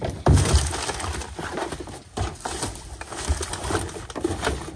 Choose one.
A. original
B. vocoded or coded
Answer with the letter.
A